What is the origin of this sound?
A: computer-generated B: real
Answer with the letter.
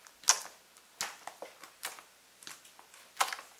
B